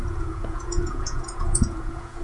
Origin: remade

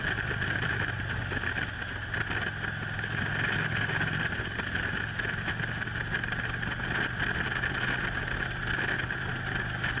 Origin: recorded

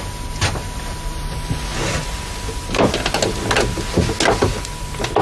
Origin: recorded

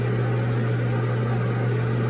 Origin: recorded